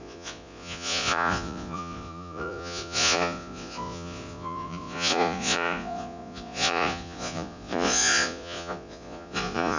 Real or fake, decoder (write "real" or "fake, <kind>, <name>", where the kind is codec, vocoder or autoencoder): fake, vocoder, Vocos